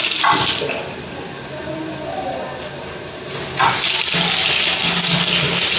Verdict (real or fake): real